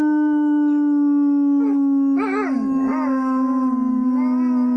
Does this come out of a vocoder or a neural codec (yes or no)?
no